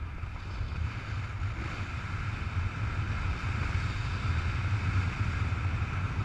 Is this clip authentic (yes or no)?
yes